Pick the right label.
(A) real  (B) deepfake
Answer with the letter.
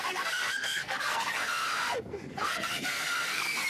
B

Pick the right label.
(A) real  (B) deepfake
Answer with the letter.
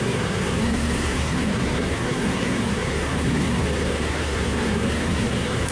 B